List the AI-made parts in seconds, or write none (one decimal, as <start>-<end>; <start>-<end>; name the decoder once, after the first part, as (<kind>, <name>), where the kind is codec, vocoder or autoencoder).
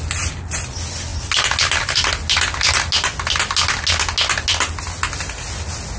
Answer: none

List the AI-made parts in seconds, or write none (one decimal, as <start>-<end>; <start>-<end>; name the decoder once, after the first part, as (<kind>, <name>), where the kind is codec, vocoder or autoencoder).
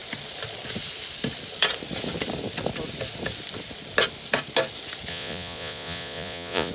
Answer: 5.1-6.7 (vocoder, Vocos)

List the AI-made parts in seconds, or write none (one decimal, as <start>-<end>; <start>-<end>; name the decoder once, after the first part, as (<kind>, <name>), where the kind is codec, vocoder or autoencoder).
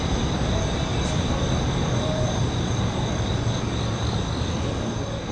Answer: 0.9-4.1 (vocoder, BigVGAN v2)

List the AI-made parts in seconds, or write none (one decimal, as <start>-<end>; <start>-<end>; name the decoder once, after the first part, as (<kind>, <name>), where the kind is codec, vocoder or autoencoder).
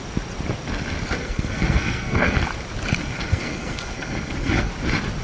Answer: 1.2-2.4 (codec, SNAC); 3.0-4.7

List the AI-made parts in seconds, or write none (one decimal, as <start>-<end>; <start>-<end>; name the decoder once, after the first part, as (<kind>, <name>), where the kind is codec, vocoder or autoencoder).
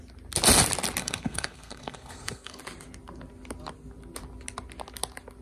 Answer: 1.0-2.6 (codec, SNAC)